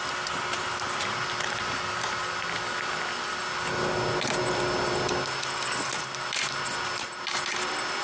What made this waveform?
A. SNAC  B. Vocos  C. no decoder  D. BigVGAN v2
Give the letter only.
C